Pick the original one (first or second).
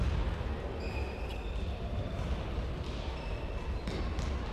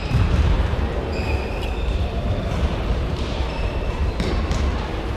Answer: first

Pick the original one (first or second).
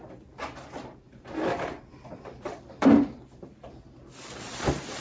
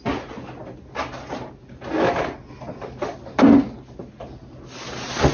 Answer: second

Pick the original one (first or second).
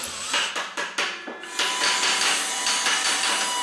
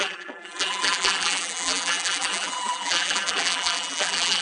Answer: first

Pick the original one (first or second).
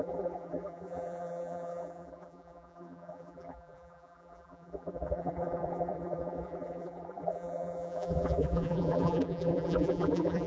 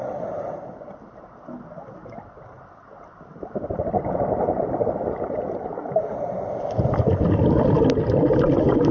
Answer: second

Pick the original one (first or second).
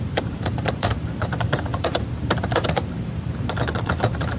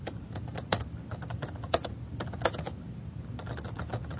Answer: second